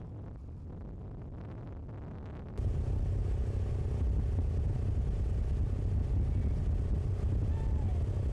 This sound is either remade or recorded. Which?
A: recorded